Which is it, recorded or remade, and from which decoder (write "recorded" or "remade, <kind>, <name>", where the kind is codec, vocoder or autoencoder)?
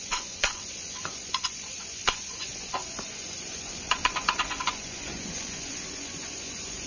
remade, vocoder, Vocos